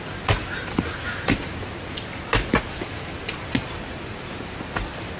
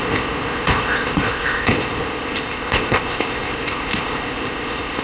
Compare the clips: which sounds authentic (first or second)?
first